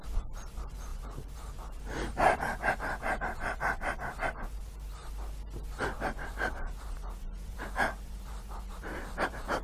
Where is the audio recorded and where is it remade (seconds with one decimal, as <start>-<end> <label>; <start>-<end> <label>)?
0.0-5.0 remade; 5.0-5.8 recorded; 5.8-9.6 remade